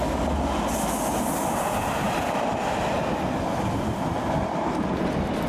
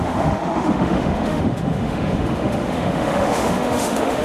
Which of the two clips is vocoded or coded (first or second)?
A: second